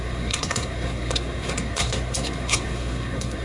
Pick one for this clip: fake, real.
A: fake